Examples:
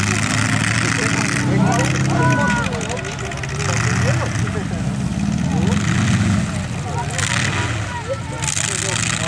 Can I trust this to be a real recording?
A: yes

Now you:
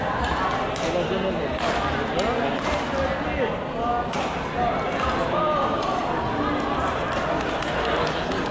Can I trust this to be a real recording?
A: yes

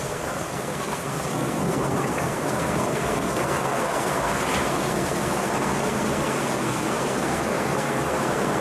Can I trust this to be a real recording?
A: no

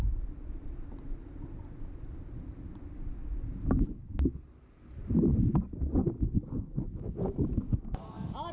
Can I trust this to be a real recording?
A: yes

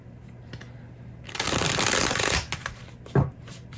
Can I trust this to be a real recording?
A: yes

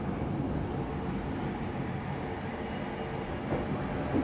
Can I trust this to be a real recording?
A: yes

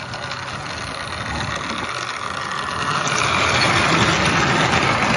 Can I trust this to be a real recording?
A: yes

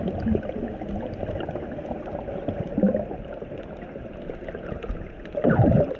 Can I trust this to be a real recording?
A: yes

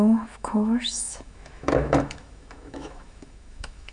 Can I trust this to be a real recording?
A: no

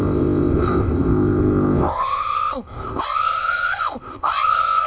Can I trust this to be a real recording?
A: no